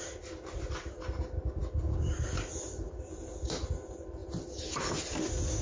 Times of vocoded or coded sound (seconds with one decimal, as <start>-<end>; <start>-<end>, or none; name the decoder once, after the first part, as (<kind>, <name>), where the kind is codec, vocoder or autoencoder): none